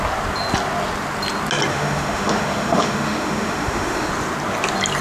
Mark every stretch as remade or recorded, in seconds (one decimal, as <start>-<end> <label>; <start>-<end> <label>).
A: 0.0-1.7 recorded; 1.7-4.1 remade; 4.1-5.0 recorded